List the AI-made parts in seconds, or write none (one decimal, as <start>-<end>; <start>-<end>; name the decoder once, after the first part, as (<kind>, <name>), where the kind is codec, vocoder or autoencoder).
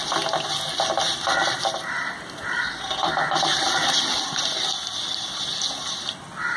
1.4-4.0 (vocoder, BigVGAN v2)